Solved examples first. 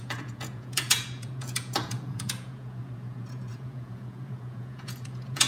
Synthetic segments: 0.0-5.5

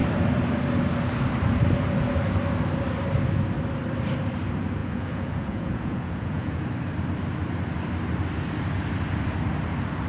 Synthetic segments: 4.8-6.6